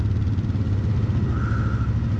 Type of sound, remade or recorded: recorded